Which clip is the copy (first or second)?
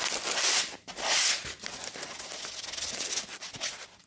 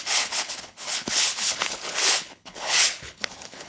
second